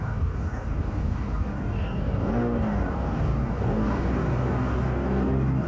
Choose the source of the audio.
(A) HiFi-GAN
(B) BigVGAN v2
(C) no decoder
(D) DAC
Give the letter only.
D